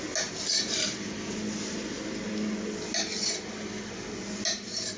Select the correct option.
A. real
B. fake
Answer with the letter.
A